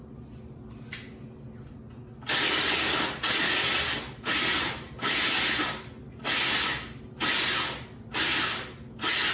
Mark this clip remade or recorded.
recorded